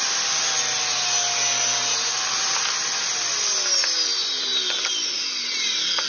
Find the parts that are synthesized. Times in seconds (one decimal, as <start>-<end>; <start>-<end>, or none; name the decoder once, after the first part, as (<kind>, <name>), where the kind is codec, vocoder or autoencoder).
none